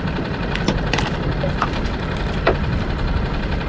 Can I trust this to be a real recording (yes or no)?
yes